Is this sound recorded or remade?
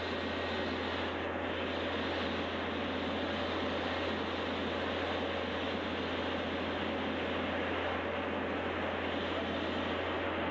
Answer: recorded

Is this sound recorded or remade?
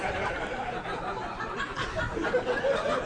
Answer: recorded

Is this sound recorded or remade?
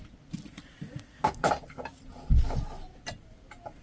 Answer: recorded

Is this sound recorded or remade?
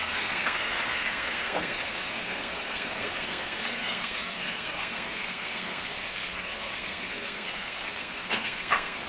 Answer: remade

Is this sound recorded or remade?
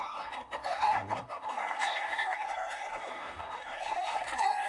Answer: remade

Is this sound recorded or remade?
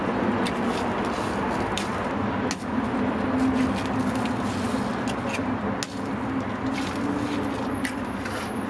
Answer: recorded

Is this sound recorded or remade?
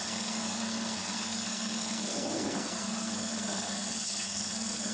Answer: remade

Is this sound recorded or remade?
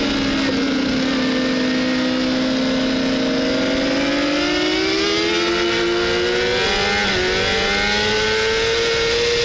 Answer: recorded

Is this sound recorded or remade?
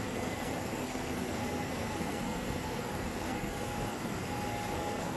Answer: remade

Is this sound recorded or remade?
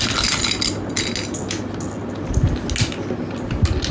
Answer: recorded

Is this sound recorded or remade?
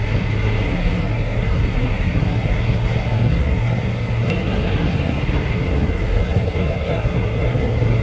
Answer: remade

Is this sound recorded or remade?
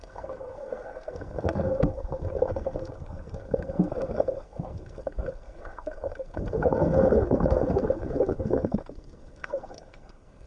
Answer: remade